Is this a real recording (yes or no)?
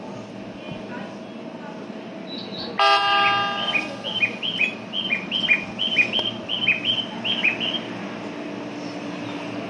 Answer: yes